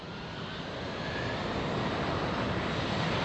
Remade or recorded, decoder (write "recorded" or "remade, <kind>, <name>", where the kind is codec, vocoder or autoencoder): recorded